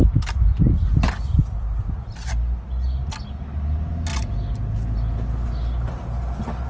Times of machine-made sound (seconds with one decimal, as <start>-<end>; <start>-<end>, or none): 1.4-2.3